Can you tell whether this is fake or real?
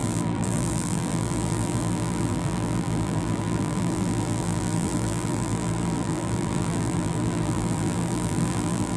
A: fake